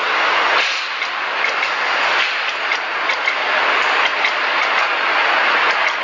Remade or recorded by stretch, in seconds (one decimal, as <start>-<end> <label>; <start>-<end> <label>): 0.0-6.0 recorded